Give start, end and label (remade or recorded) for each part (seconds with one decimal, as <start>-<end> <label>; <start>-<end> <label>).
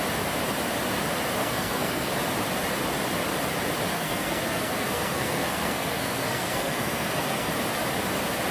0.0-1.4 recorded; 1.4-2.1 remade; 2.1-3.9 recorded; 3.9-7.5 remade; 7.5-8.5 recorded